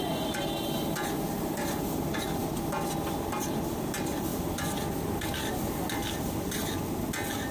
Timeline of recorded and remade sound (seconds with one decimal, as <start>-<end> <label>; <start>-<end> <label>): 0.0-2.4 recorded; 2.4-2.9 remade; 2.9-6.0 recorded; 6.0-6.7 remade; 6.7-7.5 recorded